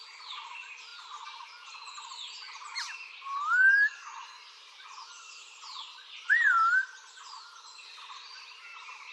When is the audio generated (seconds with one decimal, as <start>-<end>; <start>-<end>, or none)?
none